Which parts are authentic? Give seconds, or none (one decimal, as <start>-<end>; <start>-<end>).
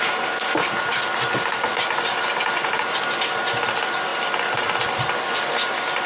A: 0.0-6.1